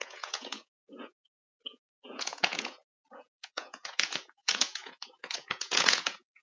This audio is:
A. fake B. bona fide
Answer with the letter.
A